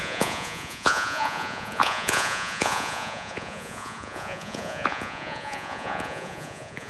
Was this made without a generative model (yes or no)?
no